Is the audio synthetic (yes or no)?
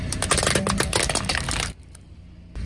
no